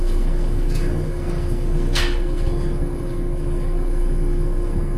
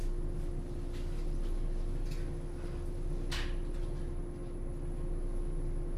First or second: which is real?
second